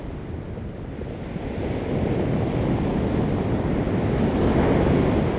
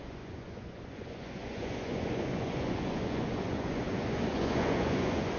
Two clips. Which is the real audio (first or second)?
first